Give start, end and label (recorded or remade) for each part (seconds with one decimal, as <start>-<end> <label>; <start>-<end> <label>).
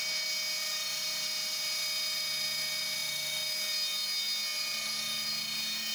0.0-5.9 recorded